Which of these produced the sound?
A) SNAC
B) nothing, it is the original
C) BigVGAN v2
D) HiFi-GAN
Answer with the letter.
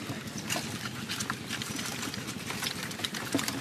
B